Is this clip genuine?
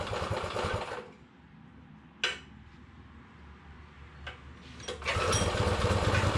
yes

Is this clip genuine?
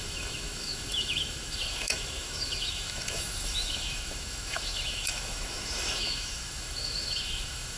no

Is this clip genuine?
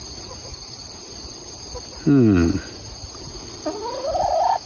yes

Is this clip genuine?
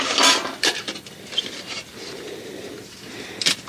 no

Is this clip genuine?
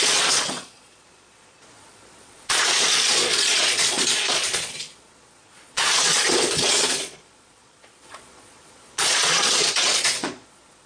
no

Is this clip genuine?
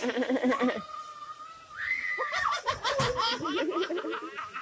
yes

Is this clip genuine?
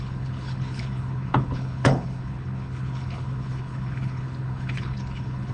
no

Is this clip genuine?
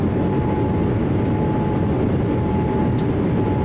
yes